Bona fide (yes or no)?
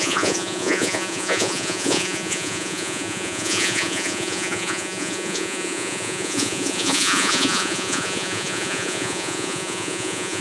no